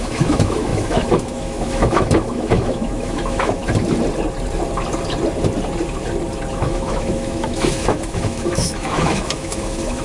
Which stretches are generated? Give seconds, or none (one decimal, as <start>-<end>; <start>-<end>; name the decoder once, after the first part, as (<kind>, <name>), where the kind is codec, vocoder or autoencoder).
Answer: 0.0-3.6 (autoencoder, DAC-VAE); 6.5-10.0